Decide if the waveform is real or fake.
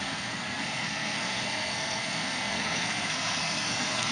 fake